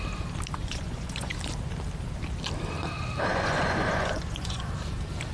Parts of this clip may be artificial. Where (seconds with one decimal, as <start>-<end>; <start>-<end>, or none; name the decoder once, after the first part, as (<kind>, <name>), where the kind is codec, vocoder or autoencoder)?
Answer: 0.6-1.3 (vocoder, Vocos); 3.3-4.7